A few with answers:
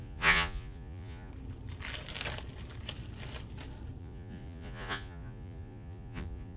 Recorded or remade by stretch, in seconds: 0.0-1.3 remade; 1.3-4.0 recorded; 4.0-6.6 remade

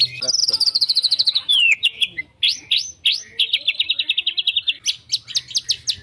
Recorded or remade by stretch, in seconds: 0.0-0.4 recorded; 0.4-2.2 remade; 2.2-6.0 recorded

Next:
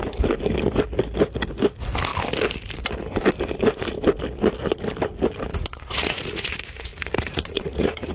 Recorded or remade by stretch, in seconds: 0.0-5.5 recorded; 5.5-8.1 remade

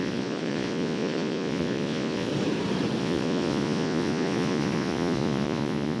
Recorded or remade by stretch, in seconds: 0.0-2.3 remade; 2.3-3.0 recorded; 3.0-6.0 remade

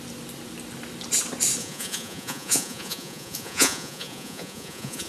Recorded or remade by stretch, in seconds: 0.0-1.6 recorded; 1.6-5.1 remade